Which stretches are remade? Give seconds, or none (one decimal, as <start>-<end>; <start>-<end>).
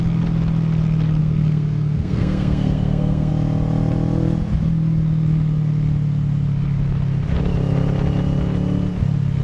1.2-3.3